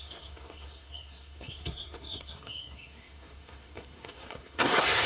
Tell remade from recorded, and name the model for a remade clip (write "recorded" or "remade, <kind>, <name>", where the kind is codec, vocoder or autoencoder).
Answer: remade, codec, SNAC